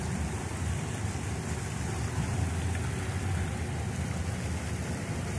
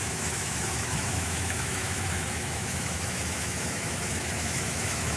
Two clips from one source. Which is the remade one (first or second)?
second